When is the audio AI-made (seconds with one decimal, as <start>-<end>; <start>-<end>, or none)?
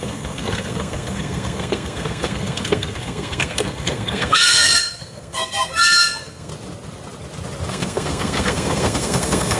0.0-6.5; 7.7-9.6